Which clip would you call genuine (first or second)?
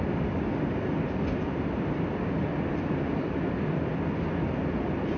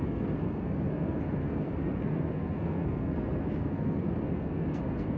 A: first